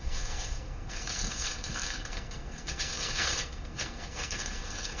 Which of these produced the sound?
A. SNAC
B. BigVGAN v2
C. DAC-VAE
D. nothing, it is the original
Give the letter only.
A